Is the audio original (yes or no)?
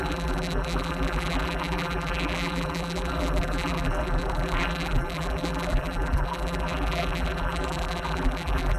no